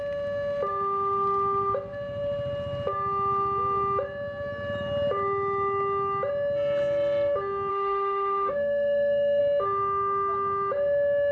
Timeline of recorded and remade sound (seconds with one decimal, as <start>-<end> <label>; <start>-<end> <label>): 0.0-7.7 recorded; 7.7-9.4 remade; 9.4-11.3 recorded